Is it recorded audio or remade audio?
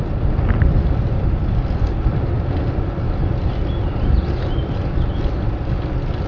recorded